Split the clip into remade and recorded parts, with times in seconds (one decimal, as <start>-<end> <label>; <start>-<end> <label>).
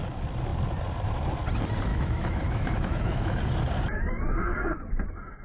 0.0-1.9 recorded; 1.9-3.4 remade; 3.4-5.4 recorded